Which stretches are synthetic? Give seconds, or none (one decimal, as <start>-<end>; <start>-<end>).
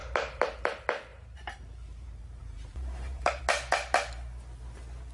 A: 1.1-3.4